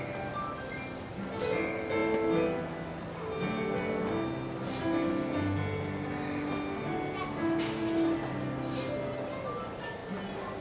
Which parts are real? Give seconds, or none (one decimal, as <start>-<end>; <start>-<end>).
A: 0.0-10.6